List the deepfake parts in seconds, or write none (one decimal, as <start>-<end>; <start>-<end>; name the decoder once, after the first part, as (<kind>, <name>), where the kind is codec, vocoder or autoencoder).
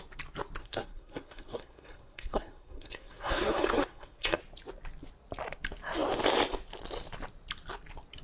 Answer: 0.6-4.4 (codec, SNAC)